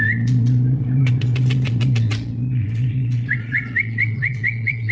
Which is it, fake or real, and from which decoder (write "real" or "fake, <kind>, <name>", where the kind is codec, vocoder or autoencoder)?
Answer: fake, vocoder, Vocos